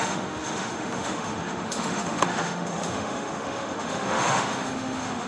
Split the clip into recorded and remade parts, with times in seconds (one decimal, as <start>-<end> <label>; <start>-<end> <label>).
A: 0.0-5.3 remade